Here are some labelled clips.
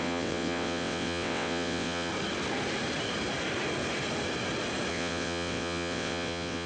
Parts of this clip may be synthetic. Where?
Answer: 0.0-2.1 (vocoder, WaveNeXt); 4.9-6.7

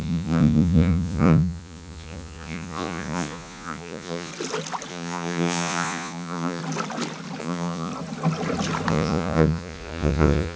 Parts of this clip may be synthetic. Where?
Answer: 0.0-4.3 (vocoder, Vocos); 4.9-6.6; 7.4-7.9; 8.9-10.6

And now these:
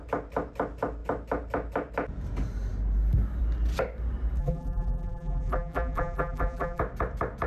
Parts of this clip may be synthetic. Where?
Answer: 4.4-6.8 (vocoder, BigVGAN v2)